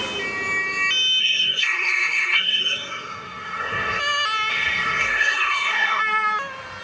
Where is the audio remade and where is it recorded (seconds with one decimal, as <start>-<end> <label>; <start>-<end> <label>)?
0.0-1.2 recorded; 1.2-4.0 remade; 4.0-4.5 recorded; 4.5-6.0 remade; 6.0-6.8 recorded